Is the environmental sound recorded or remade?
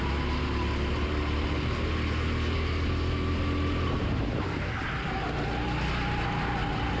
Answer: recorded